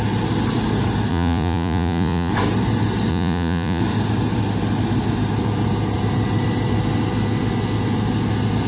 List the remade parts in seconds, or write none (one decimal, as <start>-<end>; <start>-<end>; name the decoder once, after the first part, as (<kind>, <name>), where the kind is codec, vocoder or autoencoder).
1.1-2.3 (vocoder, Vocos); 3.1-3.8